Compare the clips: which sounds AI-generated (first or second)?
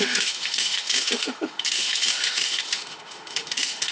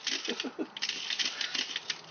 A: first